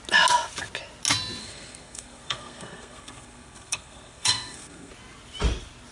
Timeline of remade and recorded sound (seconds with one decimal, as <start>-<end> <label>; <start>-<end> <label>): 0.0-1.4 recorded; 1.4-4.9 remade; 4.9-5.9 recorded